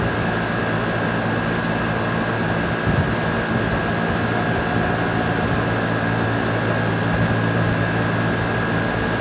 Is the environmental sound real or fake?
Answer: real